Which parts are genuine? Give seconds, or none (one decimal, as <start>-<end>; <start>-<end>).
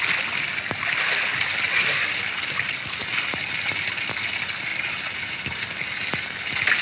0.0-6.8